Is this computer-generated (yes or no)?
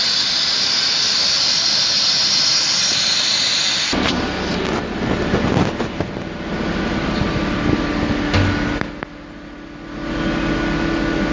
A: no